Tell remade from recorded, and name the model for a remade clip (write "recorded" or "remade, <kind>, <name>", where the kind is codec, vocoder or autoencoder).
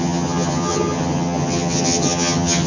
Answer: remade, vocoder, HiFi-GAN